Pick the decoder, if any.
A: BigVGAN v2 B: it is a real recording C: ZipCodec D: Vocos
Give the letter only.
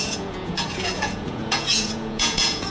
D